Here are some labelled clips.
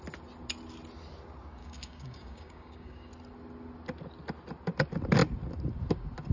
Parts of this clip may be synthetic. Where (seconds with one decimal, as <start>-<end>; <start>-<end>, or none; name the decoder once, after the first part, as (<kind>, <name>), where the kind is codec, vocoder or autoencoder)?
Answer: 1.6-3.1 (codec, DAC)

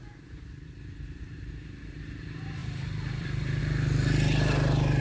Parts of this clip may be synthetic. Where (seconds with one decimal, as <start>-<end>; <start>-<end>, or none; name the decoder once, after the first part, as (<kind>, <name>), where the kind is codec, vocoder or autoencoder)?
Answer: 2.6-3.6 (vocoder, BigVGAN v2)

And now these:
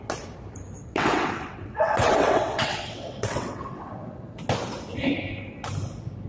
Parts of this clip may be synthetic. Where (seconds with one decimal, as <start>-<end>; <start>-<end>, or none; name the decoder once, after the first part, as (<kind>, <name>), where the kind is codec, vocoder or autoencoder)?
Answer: 0.8-3.9 (vocoder, WaveNeXt)

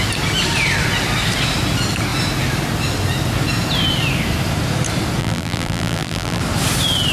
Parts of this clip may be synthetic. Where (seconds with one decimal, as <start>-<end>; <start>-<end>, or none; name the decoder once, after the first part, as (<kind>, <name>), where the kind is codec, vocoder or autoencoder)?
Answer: 5.2-6.4 (vocoder, BigVGAN v2)

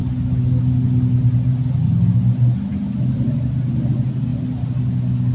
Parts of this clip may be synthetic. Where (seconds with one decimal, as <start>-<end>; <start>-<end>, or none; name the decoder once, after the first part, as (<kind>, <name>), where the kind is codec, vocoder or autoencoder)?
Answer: none